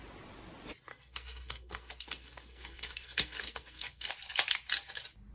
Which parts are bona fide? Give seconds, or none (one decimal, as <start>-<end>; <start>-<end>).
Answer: 0.0-0.9; 4.1-5.3